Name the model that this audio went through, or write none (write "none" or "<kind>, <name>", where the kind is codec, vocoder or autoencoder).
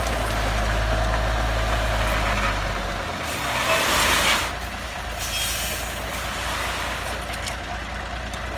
none